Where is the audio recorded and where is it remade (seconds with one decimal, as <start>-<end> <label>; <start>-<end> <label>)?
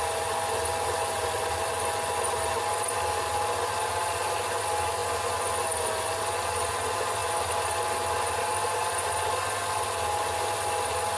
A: 0.0-11.2 recorded